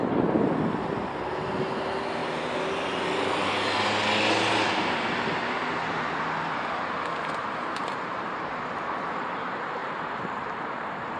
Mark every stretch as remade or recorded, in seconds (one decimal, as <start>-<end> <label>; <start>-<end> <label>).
0.0-7.4 recorded; 7.4-8.5 remade; 8.5-9.8 recorded; 9.8-11.2 remade